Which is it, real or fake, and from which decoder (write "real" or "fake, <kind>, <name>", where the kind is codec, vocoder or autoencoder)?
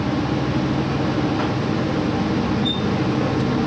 real